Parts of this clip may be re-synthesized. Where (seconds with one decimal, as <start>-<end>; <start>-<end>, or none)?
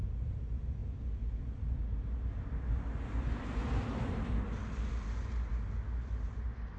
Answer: none